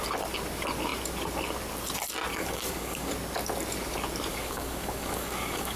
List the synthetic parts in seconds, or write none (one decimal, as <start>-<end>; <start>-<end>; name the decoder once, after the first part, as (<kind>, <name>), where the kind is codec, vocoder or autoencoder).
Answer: 2.3-3.1 (codec, DAC); 4.3-5.8